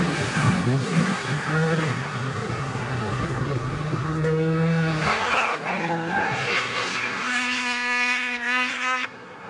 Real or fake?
fake